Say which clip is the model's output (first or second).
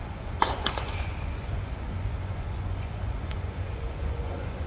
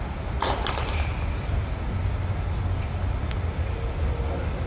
first